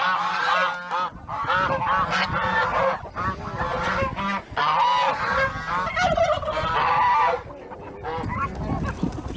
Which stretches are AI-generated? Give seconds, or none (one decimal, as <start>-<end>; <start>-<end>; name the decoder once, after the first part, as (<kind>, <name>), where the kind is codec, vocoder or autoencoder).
none